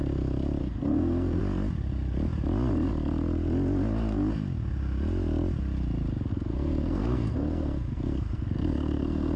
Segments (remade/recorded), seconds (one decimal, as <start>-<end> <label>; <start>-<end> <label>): 0.0-0.6 recorded; 0.6-1.4 remade; 1.4-6.3 recorded; 6.3-9.4 remade